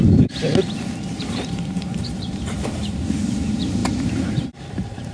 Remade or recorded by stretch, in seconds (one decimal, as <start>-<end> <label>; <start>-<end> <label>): 0.0-0.4 remade; 0.4-1.2 recorded; 1.2-5.1 remade